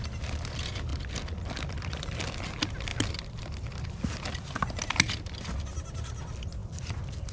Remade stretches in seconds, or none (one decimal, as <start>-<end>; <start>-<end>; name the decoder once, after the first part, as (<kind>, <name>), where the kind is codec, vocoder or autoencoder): 6.6-7.3 (vocoder, BigVGAN v2)